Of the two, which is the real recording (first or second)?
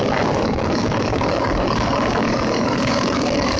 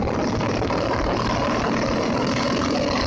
second